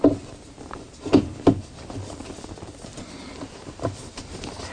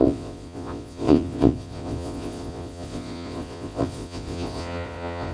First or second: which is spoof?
second